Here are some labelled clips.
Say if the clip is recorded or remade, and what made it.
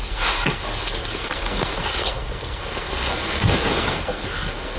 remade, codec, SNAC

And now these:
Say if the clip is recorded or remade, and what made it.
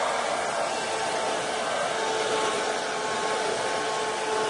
recorded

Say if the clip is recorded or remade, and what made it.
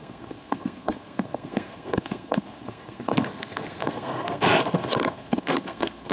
remade, codec, SNAC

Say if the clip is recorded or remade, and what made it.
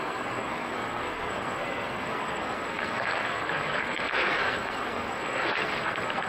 remade, codec, SNAC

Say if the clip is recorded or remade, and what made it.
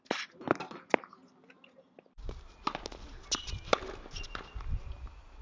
recorded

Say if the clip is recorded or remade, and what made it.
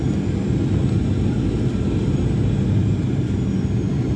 recorded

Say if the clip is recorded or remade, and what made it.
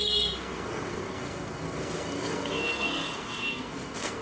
remade, codec, SNAC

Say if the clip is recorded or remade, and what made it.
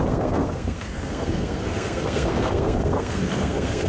remade, codec, SNAC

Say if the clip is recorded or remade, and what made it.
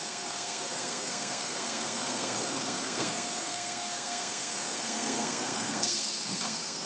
remade, codec, SNAC